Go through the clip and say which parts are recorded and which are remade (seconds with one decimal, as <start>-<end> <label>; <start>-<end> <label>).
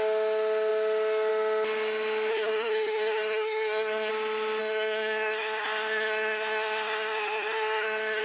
0.0-2.3 recorded; 2.3-4.1 remade; 4.1-4.6 recorded; 4.6-8.2 remade